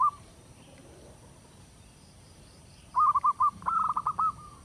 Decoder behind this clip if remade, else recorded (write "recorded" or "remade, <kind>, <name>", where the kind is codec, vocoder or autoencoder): remade, vocoder, BigVGAN v2